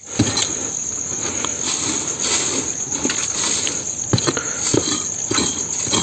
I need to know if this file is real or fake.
real